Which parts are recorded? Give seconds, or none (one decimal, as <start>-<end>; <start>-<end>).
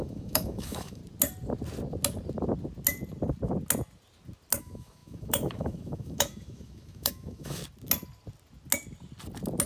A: 1.0-4.6; 7.6-9.7